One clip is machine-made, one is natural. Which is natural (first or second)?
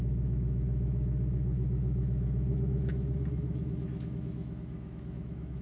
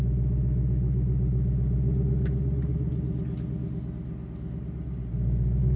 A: second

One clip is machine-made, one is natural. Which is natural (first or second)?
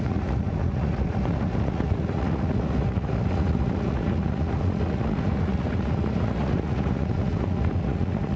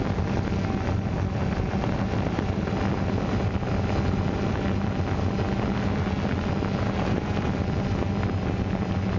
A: second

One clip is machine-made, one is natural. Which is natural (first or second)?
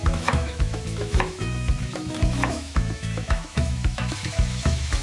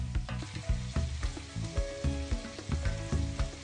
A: second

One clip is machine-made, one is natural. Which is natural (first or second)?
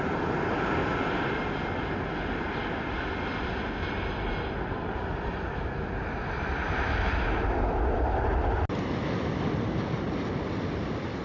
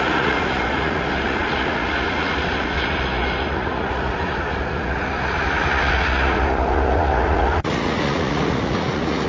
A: first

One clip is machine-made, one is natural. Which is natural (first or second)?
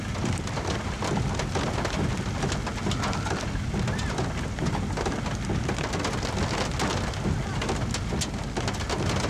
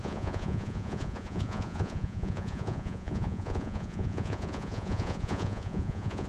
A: first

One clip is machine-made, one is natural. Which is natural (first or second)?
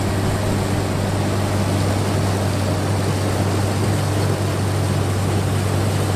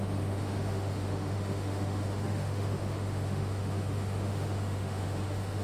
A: first